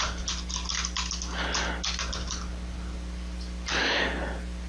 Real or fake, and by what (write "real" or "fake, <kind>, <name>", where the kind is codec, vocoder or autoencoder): real